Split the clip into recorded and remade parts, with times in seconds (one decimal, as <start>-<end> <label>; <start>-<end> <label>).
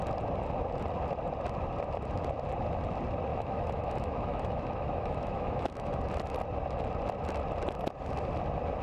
0.0-3.3 recorded; 3.3-6.0 remade; 6.0-8.8 recorded